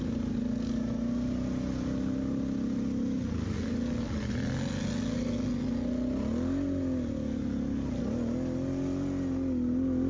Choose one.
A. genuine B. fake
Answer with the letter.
A